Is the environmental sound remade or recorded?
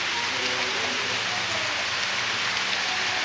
recorded